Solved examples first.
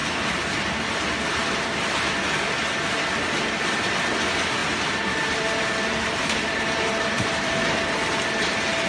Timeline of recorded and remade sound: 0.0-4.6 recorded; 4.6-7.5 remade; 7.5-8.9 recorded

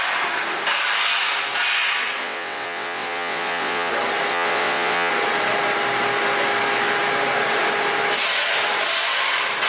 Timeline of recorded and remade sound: 0.0-2.2 recorded; 2.2-3.9 remade; 3.9-4.3 recorded; 4.3-5.1 remade; 5.1-9.7 recorded

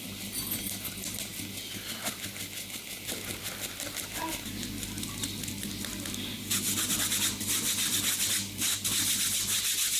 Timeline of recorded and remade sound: 0.0-10.0 recorded

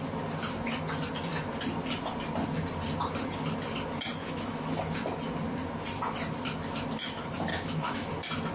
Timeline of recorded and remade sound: 0.0-4.2 recorded; 4.2-4.8 remade; 4.8-7.5 recorded; 7.5-8.1 remade; 8.1-8.5 recorded

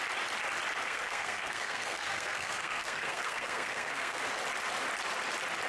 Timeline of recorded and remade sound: 0.0-0.8 recorded; 0.8-4.2 remade; 4.2-5.7 recorded

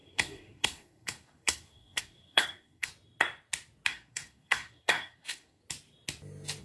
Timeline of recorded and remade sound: 0.0-2.9 remade; 2.9-3.9 recorded; 3.9-5.6 remade; 5.6-6.6 recorded